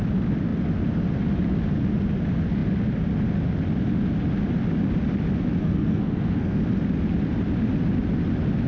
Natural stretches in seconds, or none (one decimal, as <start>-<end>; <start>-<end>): 0.0-5.6; 6.6-8.7